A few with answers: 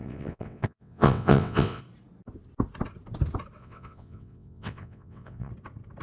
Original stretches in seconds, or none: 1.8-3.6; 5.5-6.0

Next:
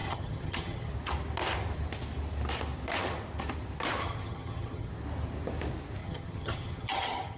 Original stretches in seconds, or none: 0.9-4.0; 4.9-6.0

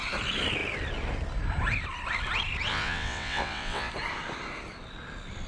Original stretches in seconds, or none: 0.0-2.7; 3.9-5.5

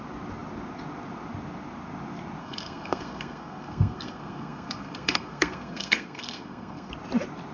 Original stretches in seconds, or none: 0.0-2.4; 6.9-7.5

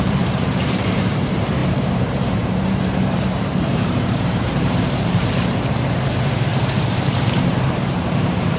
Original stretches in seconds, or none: 6.5-7.1

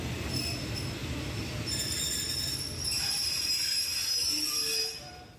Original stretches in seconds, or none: 0.0-5.4